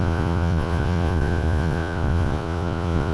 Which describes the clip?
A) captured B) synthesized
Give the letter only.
B